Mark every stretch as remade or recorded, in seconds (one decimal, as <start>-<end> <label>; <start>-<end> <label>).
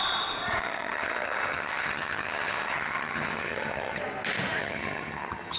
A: 0.0-0.6 recorded; 0.6-4.0 remade; 4.0-4.6 recorded; 4.6-5.6 remade